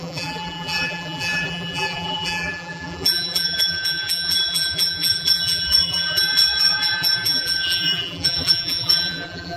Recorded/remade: remade